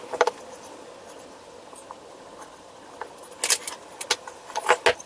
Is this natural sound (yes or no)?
yes